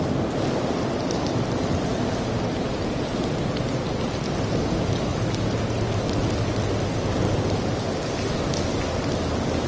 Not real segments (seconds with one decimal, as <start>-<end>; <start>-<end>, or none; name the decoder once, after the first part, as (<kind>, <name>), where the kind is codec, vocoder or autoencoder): none

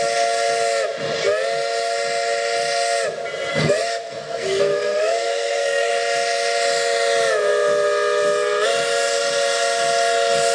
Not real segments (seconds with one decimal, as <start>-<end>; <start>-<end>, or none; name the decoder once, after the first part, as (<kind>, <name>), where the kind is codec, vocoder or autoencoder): 3.5-5.9 (codec, SNAC)

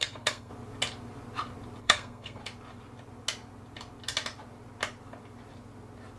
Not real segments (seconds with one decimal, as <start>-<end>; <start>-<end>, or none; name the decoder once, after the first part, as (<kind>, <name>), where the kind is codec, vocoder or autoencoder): 0.0-0.5 (codec, SNAC); 1.8-2.4